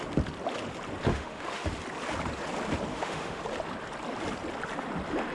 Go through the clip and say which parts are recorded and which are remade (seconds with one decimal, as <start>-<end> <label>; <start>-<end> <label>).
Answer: 0.0-1.1 recorded; 1.1-1.7 remade; 1.7-2.9 recorded; 2.9-3.4 remade; 3.4-5.3 recorded